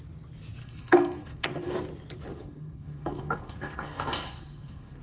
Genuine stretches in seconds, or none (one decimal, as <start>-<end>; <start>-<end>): 0.0-0.6; 1.7-2.3